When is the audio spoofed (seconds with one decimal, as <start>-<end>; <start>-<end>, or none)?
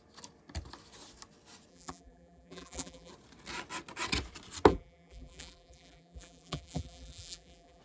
1.7-3.1; 4.7-7.8